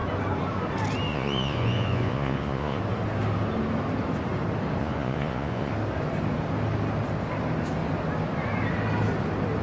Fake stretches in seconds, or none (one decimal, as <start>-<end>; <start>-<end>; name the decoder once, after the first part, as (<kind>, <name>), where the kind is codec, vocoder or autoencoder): 1.1-2.8 (vocoder, Vocos); 4.8-5.7